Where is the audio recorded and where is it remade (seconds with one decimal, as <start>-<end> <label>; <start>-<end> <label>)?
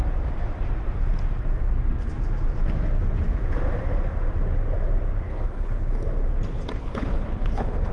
0.0-5.3 recorded; 5.3-5.9 remade; 5.9-6.8 recorded; 6.8-7.9 remade